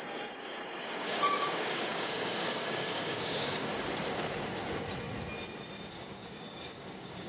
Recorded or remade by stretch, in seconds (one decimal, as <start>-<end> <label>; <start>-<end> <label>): 0.0-3.7 remade; 3.7-5.9 recorded; 5.9-7.3 remade